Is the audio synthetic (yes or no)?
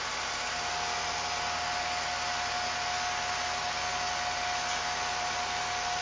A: no